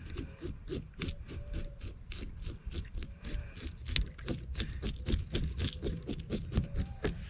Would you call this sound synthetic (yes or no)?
no